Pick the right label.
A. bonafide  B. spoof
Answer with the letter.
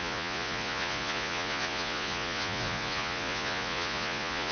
B